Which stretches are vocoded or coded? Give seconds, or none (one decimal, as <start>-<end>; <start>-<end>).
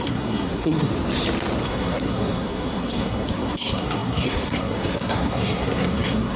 0.0-0.9; 1.6-6.4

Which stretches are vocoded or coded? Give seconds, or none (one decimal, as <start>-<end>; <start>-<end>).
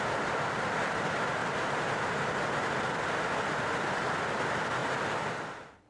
none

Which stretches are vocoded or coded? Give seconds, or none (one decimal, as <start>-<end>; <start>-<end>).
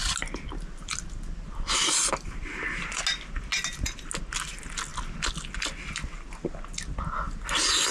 none